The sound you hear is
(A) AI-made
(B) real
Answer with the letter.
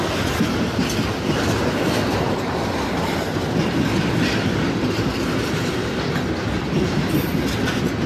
B